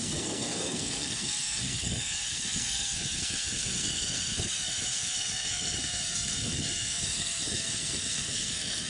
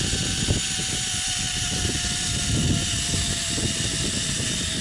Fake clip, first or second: first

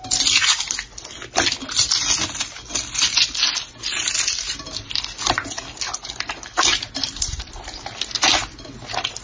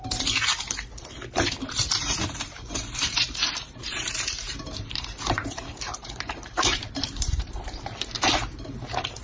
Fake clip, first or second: second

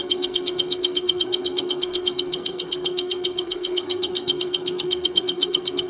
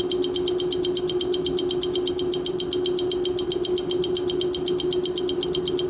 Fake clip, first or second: first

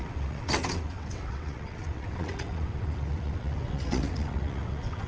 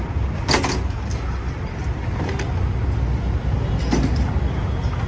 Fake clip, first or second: first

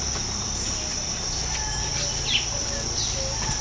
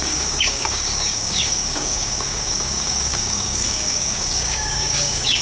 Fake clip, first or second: second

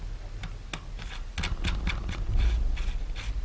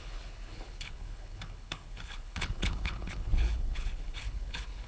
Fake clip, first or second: second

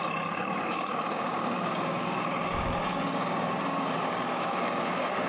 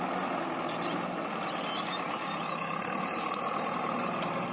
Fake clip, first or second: first